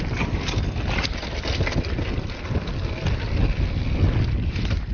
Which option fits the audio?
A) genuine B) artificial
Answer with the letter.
A